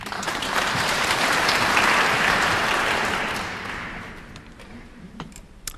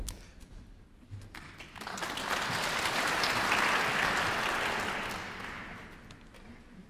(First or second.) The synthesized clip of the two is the first